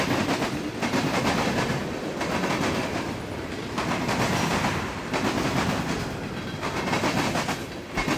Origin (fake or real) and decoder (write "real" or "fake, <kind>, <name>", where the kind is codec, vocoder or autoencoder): real